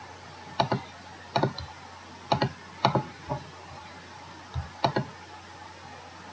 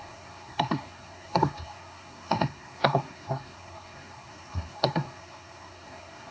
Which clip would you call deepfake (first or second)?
second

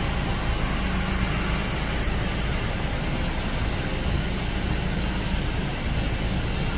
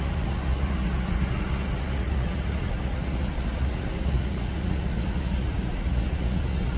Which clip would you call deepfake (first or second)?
second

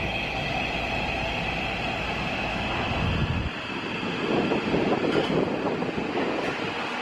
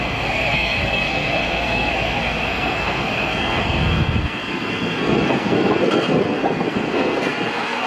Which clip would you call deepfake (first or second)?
second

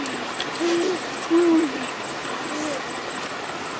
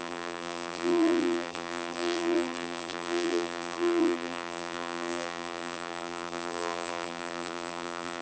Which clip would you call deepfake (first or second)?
second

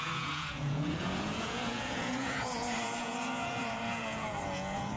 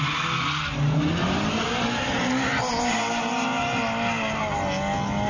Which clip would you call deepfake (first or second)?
first